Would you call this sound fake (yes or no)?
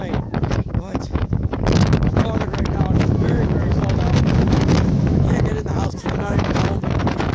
yes